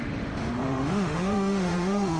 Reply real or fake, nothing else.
fake